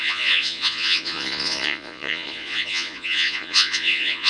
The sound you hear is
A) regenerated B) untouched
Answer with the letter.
A